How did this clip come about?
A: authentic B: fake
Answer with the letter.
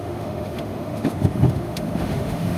B